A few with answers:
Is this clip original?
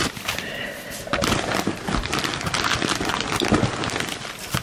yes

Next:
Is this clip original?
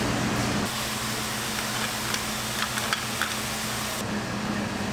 yes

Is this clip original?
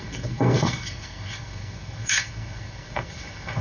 no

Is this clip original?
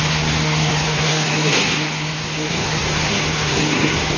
no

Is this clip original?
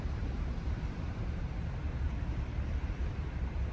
no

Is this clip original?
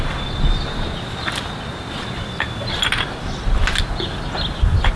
yes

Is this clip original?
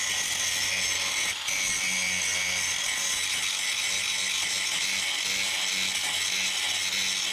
yes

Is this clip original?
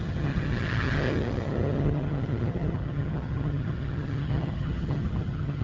no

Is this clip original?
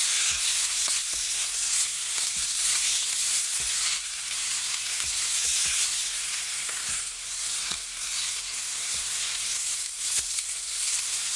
no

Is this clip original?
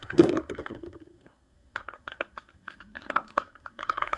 no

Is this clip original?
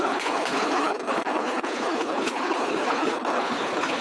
no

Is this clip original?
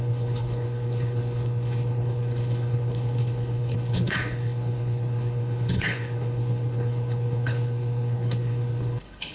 no